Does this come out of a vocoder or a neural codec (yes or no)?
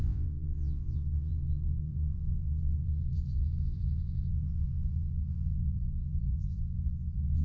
yes